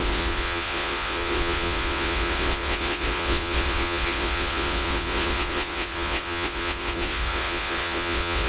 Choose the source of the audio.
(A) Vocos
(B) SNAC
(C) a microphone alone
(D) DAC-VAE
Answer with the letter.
A